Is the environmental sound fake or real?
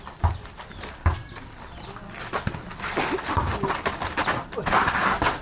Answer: real